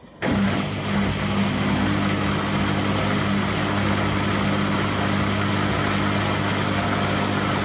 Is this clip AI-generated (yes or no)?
no